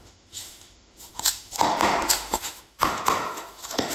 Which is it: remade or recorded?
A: remade